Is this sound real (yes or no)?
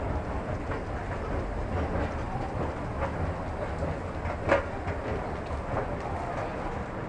yes